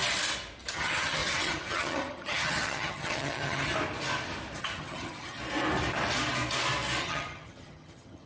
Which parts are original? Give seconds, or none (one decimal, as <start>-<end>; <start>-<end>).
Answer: 0.0-0.7; 3.7-4.6; 5.4-7.0